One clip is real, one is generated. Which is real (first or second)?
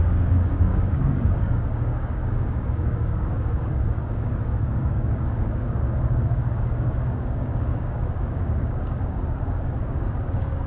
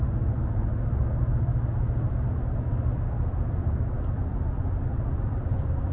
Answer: second